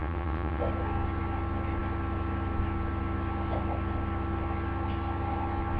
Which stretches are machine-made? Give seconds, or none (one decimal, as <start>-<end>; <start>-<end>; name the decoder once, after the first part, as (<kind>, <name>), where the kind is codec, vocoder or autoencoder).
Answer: 0.0-0.6 (vocoder, WaveNeXt)